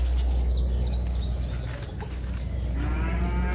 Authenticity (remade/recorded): recorded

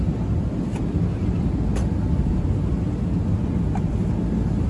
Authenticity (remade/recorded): recorded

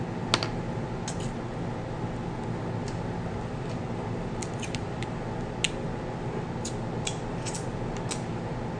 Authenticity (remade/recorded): recorded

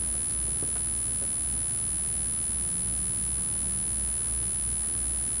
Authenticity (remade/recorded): recorded